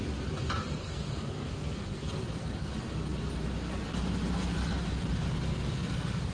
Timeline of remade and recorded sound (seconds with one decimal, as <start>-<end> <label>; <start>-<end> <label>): 0.0-0.8 recorded; 0.8-2.7 remade; 2.7-5.5 recorded; 5.5-6.3 remade